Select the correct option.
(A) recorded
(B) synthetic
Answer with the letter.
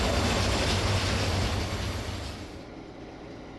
A